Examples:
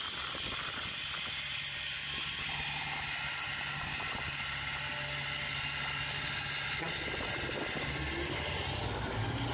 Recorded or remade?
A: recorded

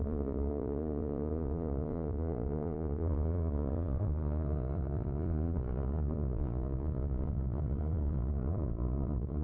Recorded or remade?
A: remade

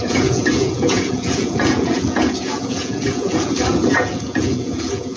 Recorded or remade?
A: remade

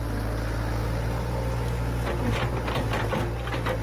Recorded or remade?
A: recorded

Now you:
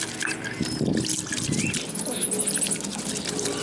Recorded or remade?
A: recorded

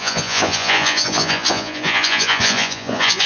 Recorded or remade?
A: remade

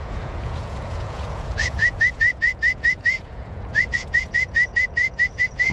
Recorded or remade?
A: remade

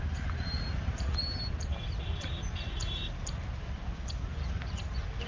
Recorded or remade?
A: recorded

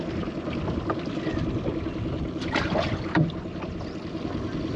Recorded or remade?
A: recorded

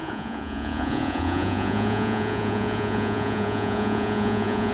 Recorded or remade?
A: remade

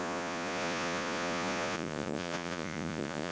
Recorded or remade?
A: remade